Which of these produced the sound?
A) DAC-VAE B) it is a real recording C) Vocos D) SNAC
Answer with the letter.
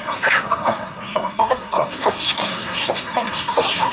D